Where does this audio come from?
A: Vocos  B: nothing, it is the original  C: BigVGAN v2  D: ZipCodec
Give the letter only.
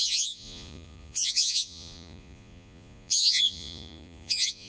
A